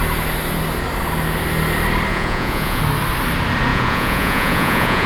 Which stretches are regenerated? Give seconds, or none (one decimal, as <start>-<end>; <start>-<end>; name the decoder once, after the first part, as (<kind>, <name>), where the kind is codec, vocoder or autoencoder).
2.1-2.8 (vocoder, Vocos); 3.7-5.1